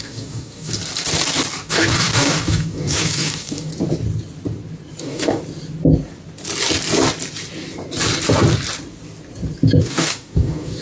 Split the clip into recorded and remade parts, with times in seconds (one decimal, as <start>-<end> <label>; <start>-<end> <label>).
0.0-0.8 remade; 0.8-1.6 recorded; 1.6-3.7 remade; 3.7-5.0 recorded; 5.0-5.4 remade; 5.4-9.8 recorded; 9.8-10.8 remade